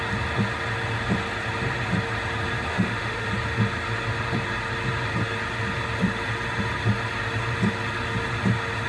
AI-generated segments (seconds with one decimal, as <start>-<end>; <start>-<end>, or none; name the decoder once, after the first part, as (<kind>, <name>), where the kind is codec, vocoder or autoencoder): 2.7-3.3 (autoencoder, DAC-VAE)